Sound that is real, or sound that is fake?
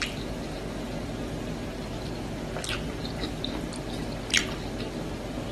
real